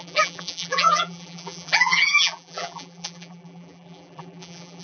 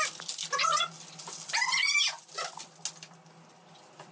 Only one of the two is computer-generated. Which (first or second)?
first